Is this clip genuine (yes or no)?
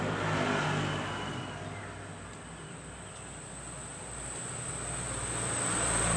yes